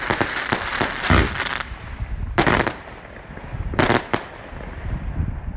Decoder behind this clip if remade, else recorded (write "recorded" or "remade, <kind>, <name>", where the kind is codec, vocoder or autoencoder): remade, vocoder, BigVGAN v2